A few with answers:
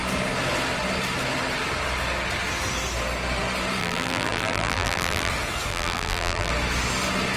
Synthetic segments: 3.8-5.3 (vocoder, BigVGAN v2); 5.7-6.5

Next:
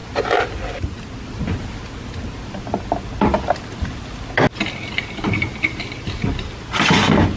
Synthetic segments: none

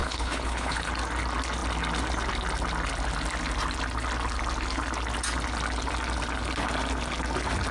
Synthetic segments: 0.0-0.9 (codec, HILCodec)